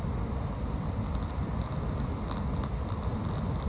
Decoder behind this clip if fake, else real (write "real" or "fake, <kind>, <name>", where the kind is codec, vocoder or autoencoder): real